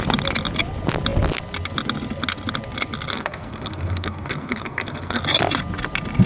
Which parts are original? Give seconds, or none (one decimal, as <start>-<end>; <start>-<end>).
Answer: 0.0-3.1; 5.2-6.3